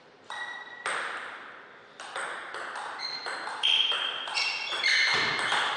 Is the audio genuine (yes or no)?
yes